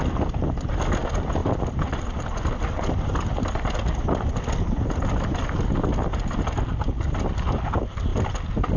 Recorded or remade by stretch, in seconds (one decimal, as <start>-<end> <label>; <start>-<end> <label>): 0.0-1.4 recorded; 1.4-5.4 remade; 5.4-8.8 recorded